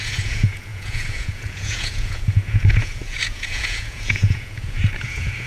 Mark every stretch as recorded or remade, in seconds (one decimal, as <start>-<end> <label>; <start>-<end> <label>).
0.0-5.5 remade